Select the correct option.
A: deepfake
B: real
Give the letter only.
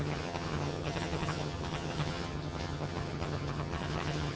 A